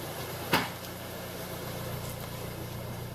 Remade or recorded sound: recorded